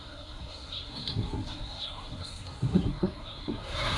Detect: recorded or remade remade